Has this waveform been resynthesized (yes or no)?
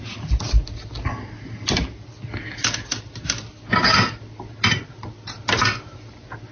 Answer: no